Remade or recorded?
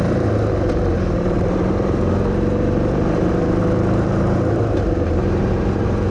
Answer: remade